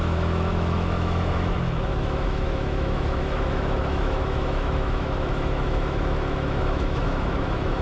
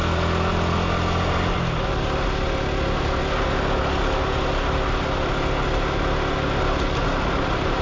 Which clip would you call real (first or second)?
second